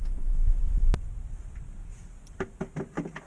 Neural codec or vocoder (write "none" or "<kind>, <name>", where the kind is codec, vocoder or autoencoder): none